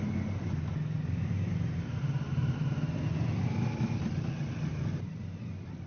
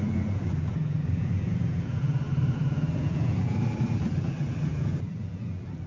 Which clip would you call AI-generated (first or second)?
second